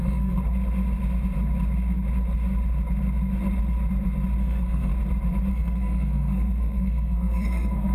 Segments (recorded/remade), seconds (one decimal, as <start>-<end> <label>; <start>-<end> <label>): 0.0-0.4 remade; 0.4-4.4 recorded; 4.4-4.9 remade; 4.9-5.5 recorded; 5.5-7.9 remade